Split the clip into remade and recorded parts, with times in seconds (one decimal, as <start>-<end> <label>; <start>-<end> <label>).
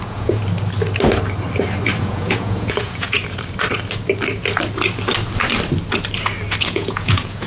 0.0-0.4 remade; 0.4-2.0 recorded; 2.0-3.2 remade; 3.2-6.6 recorded; 6.6-7.5 remade